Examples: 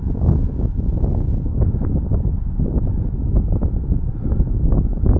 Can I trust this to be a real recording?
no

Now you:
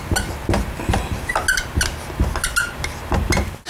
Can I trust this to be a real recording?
yes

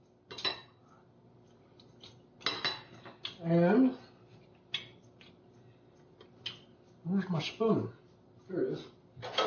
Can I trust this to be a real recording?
yes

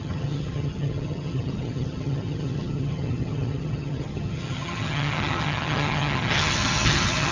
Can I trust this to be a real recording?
no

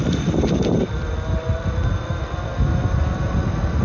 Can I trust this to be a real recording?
yes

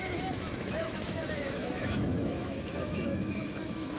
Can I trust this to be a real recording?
no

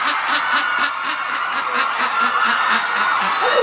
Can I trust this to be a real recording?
yes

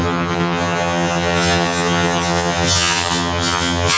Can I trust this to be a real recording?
no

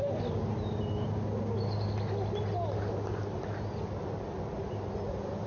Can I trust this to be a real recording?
yes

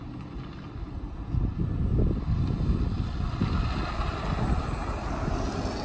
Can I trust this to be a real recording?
yes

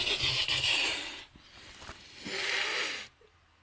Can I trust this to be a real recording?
yes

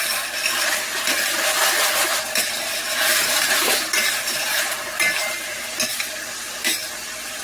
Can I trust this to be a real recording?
yes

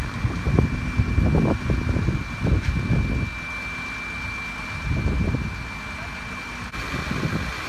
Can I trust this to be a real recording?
yes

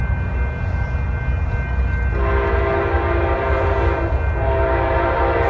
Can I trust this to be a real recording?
yes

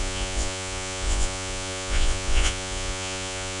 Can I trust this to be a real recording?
no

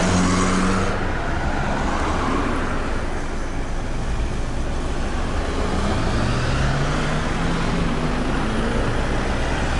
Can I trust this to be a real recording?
yes